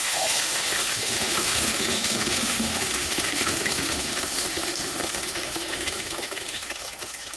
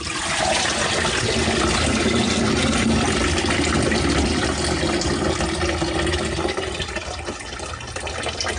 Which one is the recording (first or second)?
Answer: second